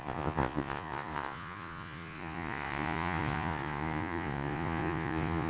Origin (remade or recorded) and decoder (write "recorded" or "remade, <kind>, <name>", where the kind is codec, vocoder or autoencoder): remade, vocoder, Vocos